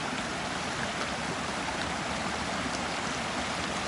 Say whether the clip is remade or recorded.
recorded